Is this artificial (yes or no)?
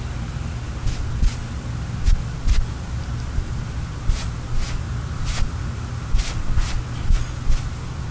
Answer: no